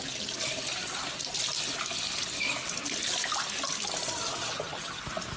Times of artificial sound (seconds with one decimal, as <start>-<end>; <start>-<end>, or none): 4.4-5.0

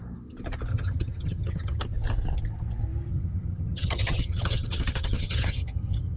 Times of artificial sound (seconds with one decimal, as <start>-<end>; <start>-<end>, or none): 0.7-1.8; 3.1-6.2